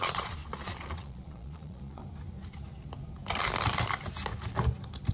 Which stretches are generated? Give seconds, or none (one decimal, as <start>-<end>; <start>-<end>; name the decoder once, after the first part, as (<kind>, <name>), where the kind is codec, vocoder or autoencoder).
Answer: 0.0-2.0 (vocoder, Vocos)